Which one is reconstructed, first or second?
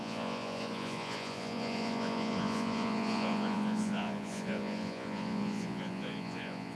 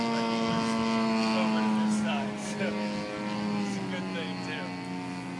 first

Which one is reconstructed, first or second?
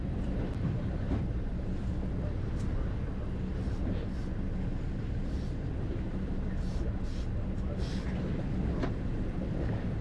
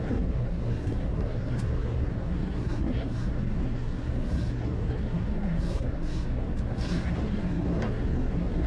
second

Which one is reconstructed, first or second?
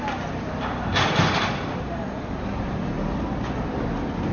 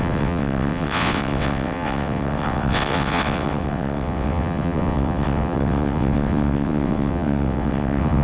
second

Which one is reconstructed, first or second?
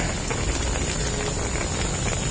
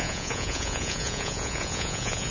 second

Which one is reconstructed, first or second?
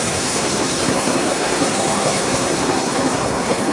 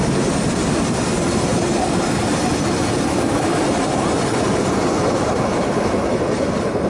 first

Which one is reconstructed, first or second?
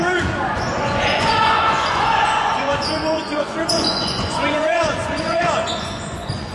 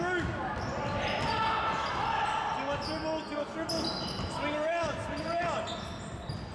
first